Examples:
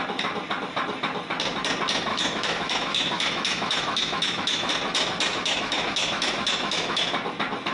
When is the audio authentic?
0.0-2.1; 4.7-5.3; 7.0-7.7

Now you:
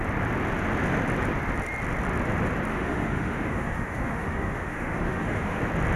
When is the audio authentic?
0.0-2.7; 5.6-6.0

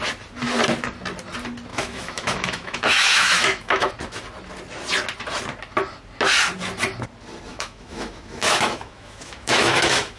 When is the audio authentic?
0.0-1.7; 3.9-7.5

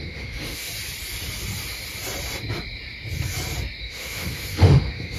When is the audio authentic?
0.7-3.8

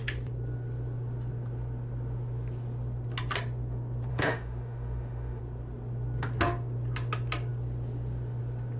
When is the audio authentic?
0.0-4.1; 5.4-8.8

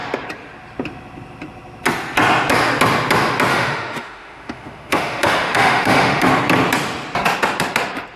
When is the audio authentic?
0.0-3.5; 6.3-8.2

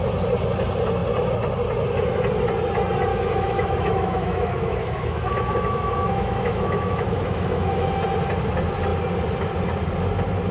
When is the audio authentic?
0.0-3.1; 7.9-10.5

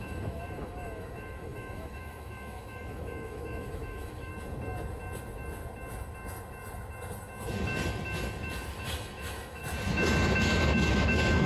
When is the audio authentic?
4.3-8.7; 9.6-10.9